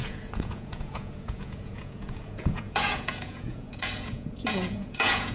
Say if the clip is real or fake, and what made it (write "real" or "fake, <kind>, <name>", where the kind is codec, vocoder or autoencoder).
fake, vocoder, Vocos